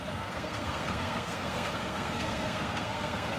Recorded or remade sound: remade